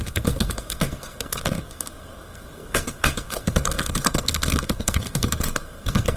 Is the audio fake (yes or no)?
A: yes